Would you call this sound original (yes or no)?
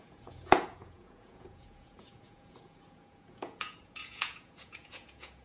no